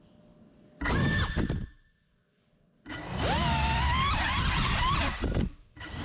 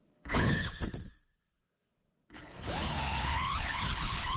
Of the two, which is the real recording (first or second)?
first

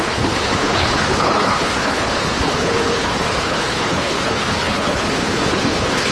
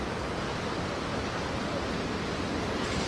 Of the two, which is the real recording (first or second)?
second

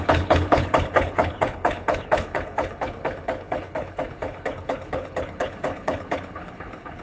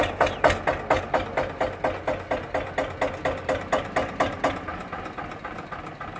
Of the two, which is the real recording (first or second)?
second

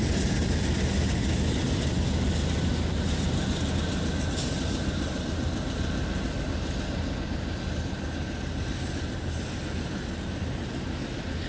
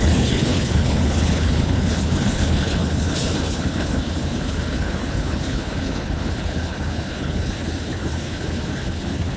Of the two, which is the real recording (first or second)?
first